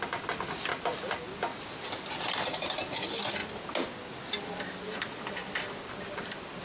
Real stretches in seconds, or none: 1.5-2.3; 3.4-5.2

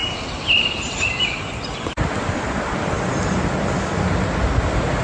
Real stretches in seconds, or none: 3.0-5.0

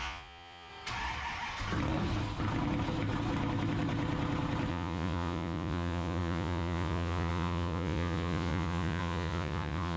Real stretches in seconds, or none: 0.7-4.7

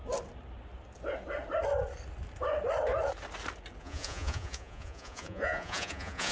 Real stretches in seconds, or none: 0.0-3.8